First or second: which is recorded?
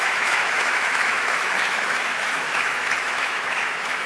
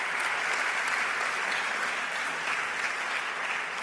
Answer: second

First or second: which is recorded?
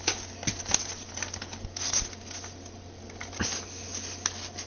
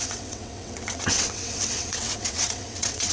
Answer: first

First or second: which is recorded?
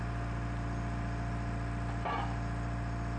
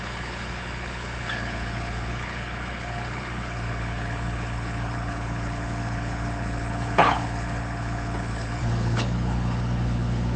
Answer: first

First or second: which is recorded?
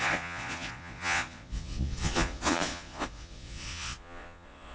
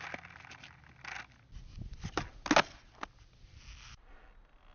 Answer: second